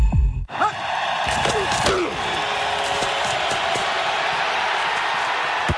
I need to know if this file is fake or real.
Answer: real